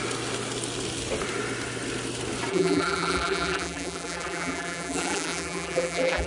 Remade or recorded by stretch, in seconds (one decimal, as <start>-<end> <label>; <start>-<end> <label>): 0.0-2.5 recorded; 2.5-6.3 remade